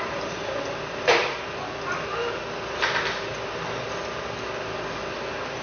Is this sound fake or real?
real